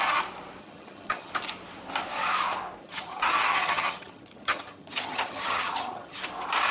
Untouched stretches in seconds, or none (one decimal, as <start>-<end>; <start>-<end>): 0.0-0.6; 1.3-2.8; 6.2-6.7